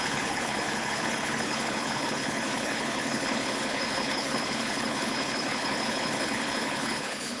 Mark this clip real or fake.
fake